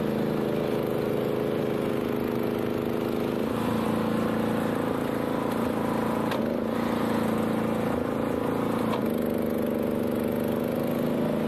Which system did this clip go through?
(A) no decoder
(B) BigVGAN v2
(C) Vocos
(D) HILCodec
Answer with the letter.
A